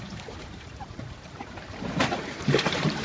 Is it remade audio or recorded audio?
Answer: remade